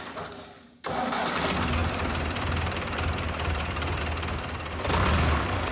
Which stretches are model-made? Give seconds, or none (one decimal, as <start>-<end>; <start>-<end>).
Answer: 1.8-4.0